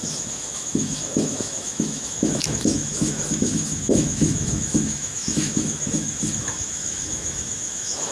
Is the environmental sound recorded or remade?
remade